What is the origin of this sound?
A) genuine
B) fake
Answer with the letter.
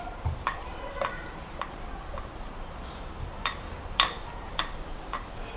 B